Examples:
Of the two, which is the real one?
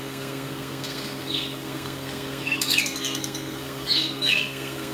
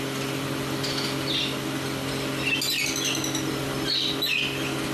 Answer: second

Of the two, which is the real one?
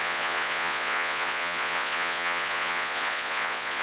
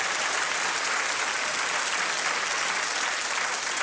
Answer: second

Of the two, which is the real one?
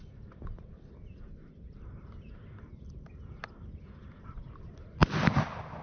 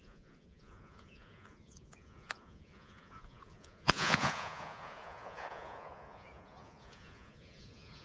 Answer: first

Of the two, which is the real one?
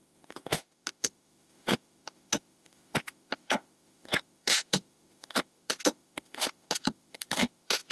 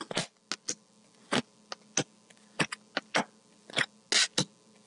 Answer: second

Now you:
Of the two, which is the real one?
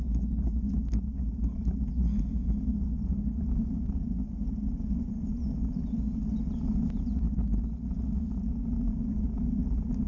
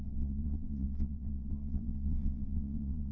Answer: first